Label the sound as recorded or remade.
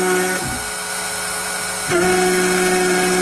recorded